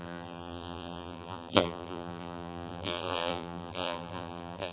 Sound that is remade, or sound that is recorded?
remade